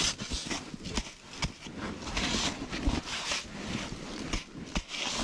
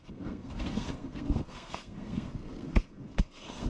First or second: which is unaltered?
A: first